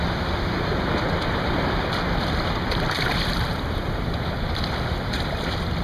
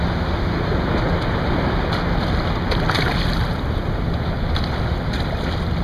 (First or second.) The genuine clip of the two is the second